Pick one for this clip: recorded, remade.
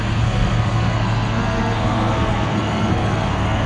remade